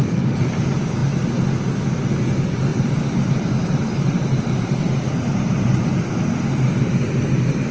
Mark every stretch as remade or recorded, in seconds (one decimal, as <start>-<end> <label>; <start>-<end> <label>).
0.0-7.7 recorded